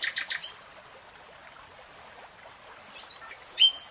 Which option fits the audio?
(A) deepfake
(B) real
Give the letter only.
B